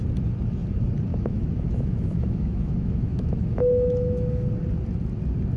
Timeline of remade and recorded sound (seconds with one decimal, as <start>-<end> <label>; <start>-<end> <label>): 0.0-1.1 recorded; 1.1-4.5 remade; 4.5-5.6 recorded